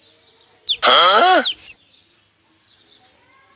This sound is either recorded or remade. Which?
recorded